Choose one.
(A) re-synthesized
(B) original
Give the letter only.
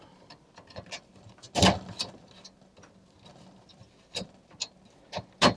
B